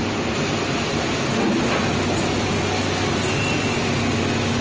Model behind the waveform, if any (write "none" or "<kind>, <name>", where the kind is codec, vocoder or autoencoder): none